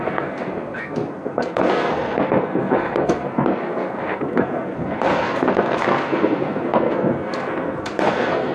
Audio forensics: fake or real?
fake